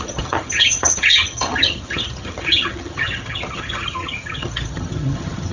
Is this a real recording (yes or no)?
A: no